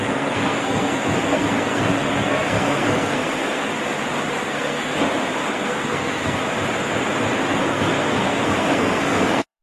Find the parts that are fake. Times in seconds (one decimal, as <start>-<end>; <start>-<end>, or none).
0.0-3.7; 4.3-4.9; 5.5-6.4; 7.5-9.6